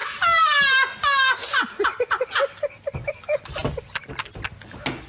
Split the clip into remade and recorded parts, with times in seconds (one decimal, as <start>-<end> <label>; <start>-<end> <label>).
0.0-5.1 recorded